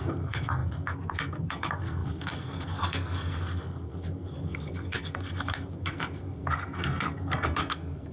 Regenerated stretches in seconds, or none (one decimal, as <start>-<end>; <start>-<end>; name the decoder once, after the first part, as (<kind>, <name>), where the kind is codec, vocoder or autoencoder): 0.0-8.1 (codec, SNAC)